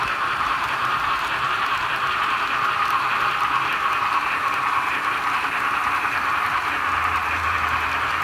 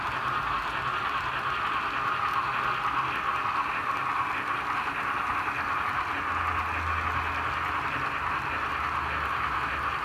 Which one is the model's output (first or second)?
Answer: first